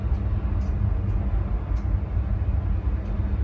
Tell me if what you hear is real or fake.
real